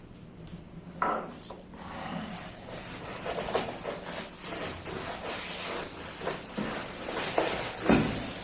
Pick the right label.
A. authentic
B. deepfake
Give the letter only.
A